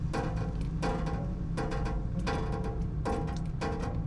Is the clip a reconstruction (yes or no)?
no